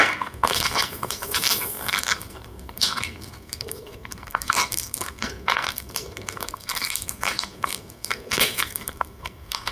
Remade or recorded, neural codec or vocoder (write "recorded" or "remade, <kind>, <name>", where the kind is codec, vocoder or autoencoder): remade, codec, SNAC